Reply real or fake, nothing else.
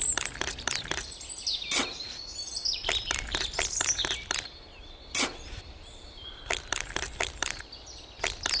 real